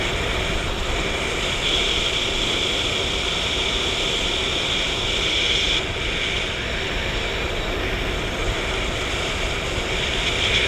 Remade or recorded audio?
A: recorded